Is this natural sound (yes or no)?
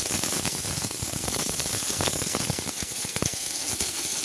no